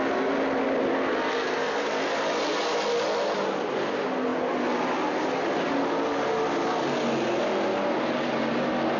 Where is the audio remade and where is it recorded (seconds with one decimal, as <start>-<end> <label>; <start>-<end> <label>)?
0.0-9.0 recorded